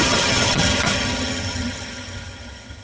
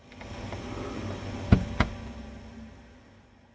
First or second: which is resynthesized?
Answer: first